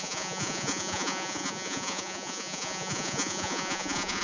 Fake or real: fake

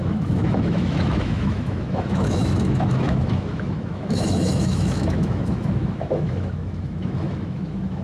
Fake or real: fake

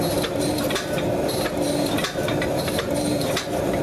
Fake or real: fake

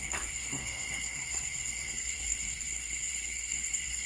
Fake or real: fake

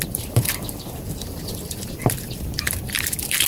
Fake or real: fake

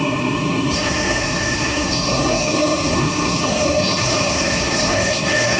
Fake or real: fake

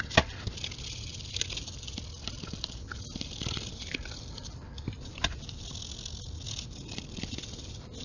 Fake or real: fake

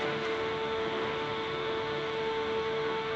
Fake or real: fake